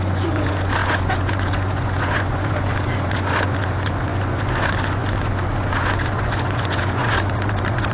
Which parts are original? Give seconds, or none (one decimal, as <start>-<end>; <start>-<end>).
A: none